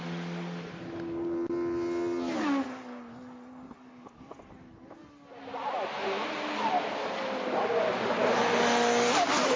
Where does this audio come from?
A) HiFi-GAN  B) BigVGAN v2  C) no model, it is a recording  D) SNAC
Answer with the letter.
C